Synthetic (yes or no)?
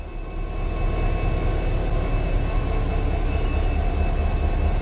no